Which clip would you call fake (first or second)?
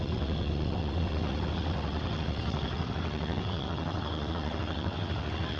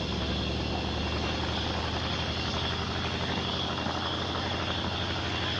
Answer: first